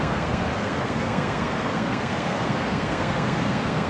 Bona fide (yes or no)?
no